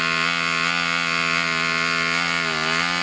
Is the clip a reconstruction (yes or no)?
no